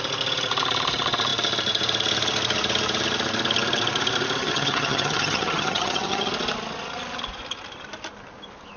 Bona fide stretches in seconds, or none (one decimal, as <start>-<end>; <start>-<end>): 0.0-4.4; 6.3-8.8